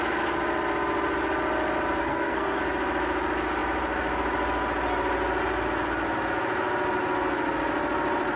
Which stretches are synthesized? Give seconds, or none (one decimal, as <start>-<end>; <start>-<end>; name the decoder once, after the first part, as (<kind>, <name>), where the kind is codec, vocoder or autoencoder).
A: 2.0-2.6 (codec, SNAC)